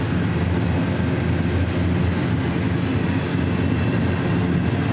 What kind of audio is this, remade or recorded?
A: recorded